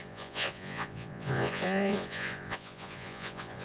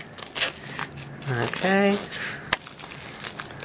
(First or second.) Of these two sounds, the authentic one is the second